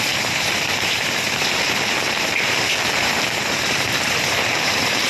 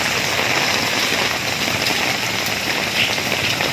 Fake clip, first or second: first